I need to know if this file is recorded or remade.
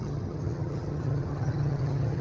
remade